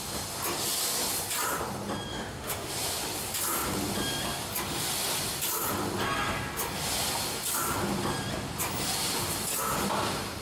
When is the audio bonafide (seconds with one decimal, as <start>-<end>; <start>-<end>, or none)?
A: 0.0-2.1; 2.7-10.4